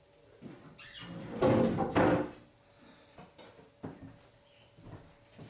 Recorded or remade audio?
recorded